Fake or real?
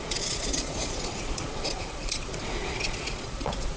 fake